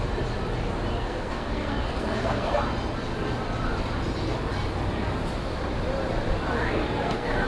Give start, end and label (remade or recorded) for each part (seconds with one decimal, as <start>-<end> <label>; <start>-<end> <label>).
0.0-0.9 recorded; 0.9-2.6 remade; 2.6-6.6 recorded; 6.6-7.5 remade